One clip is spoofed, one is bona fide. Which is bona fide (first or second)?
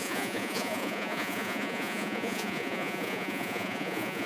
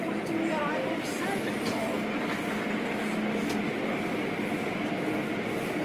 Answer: second